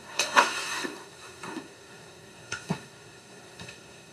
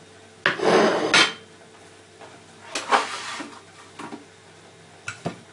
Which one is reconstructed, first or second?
first